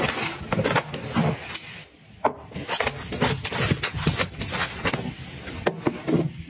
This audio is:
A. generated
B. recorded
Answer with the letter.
B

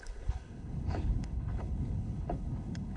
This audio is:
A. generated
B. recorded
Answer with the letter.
A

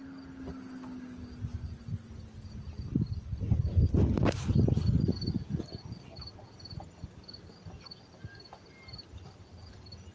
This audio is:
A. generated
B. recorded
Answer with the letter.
B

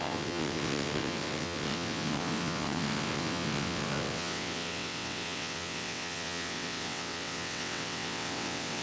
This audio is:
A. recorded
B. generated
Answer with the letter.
B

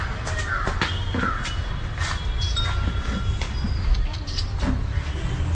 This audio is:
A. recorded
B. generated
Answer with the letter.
A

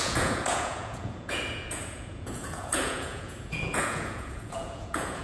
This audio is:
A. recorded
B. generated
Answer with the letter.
B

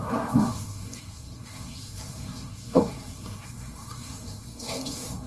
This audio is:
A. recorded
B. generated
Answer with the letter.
B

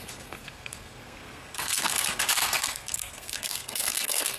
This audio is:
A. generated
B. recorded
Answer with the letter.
A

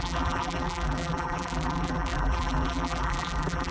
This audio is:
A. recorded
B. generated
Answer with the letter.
B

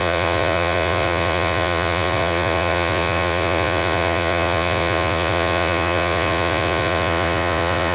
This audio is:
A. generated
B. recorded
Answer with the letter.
A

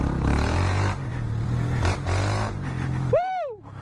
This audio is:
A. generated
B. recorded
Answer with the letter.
A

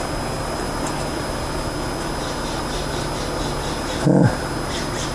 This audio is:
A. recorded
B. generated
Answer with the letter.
A